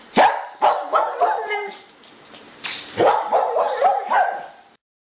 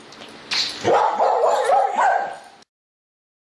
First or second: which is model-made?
first